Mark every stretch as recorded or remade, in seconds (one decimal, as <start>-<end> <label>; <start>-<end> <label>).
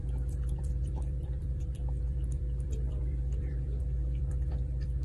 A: 0.0-5.0 remade